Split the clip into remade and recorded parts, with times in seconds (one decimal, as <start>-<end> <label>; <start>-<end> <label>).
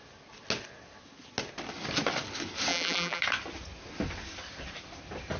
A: 0.0-2.7 recorded; 2.7-3.2 remade; 3.2-5.4 recorded